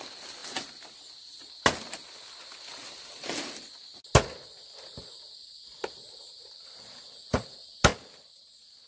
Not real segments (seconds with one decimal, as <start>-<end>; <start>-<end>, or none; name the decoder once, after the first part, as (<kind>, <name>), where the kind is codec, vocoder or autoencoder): none